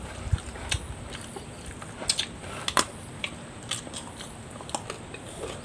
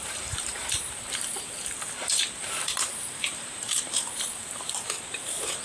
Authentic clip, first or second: first